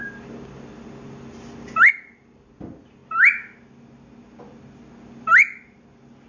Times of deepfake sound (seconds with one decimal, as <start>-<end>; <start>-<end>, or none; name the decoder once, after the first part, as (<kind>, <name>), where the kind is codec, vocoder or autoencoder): none